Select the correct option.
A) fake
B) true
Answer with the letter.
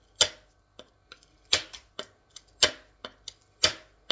B